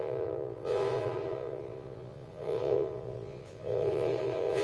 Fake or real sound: fake